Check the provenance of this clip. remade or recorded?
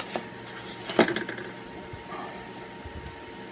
recorded